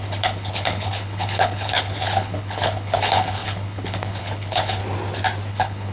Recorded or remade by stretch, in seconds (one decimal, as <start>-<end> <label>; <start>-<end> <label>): 0.0-4.8 remade; 4.8-5.5 recorded; 5.5-5.9 remade